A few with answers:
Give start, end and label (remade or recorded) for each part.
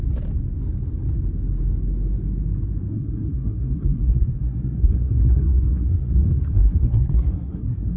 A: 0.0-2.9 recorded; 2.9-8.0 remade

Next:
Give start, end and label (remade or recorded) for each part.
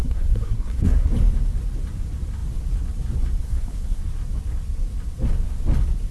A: 0.0-1.1 remade; 1.1-3.4 recorded; 3.4-4.0 remade; 4.0-6.1 recorded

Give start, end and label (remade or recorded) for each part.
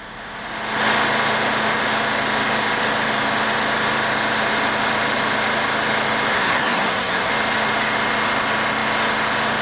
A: 0.0-6.3 recorded; 6.3-7.3 remade; 7.3-9.6 recorded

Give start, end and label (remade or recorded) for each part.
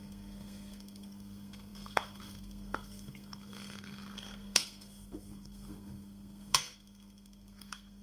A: 0.0-8.0 remade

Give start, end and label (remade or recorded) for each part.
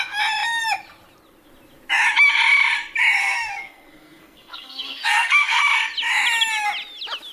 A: 0.0-3.2 recorded; 3.2-5.6 remade; 5.6-7.3 recorded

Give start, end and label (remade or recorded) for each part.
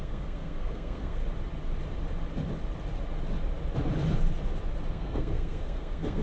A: 0.0-1.2 remade; 1.2-4.9 recorded; 4.9-6.2 remade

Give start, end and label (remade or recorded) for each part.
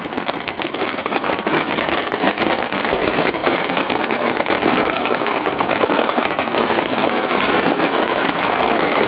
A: 0.0-9.1 remade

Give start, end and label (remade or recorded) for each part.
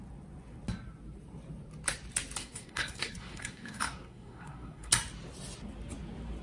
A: 0.0-2.4 recorded; 2.4-4.9 remade; 4.9-6.4 recorded